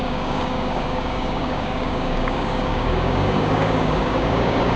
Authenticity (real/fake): fake